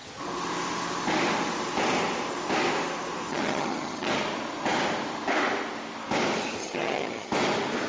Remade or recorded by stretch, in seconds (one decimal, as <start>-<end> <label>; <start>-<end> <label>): 0.0-3.3 recorded; 3.3-4.1 remade; 4.1-6.6 recorded; 6.6-7.3 remade; 7.3-7.9 recorded